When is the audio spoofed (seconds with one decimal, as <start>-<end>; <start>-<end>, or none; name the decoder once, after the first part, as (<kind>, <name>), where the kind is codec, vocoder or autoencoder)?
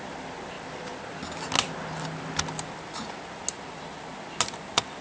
none